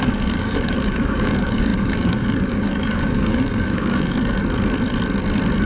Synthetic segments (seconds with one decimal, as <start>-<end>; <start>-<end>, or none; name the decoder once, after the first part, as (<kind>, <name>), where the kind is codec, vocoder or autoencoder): 0.0-4.4 (codec, DAC)